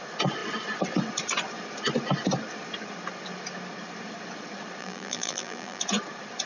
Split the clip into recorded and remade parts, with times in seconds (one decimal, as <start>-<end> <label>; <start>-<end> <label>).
0.0-4.8 recorded; 4.8-5.8 remade; 5.8-6.5 recorded

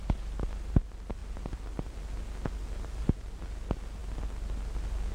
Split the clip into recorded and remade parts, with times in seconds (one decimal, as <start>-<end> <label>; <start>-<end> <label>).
0.0-5.1 recorded

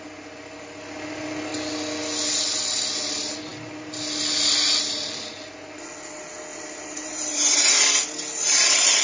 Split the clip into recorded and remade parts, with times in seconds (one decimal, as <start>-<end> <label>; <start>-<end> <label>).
0.0-6.5 recorded; 6.5-7.7 remade; 7.7-9.0 recorded

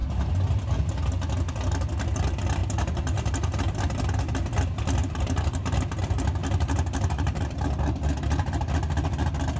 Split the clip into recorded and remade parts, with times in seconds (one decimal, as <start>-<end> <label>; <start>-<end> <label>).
0.0-2.6 recorded; 2.6-3.8 remade; 3.8-5.0 recorded; 5.0-5.8 remade; 5.8-6.4 recorded; 6.4-7.7 remade; 7.7-9.6 recorded

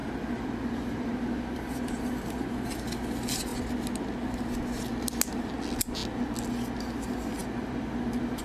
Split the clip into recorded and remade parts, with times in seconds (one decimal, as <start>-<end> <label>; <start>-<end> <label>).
0.0-2.7 remade; 2.7-7.4 recorded; 7.4-8.4 remade

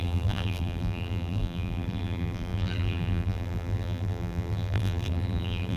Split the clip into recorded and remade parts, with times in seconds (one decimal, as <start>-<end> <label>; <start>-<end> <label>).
0.0-5.8 remade